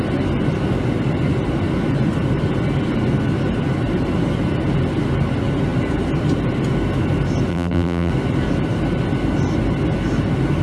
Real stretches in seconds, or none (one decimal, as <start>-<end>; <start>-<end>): 0.0-7.5; 8.1-10.6